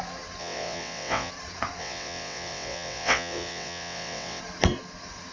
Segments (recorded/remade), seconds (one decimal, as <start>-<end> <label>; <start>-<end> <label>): 0.0-0.4 recorded; 0.4-1.3 remade; 1.3-1.8 recorded; 1.8-4.4 remade; 4.4-5.3 recorded